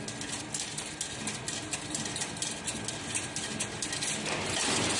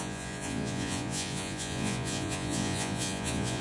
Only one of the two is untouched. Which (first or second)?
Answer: first